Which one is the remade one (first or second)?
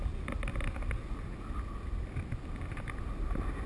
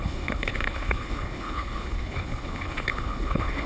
second